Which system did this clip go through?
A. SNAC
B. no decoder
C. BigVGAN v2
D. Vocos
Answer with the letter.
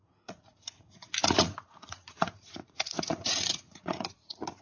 D